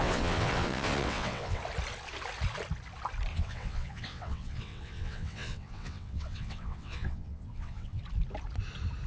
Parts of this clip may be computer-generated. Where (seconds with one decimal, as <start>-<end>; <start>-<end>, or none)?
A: 0.0-1.6; 3.3-8.0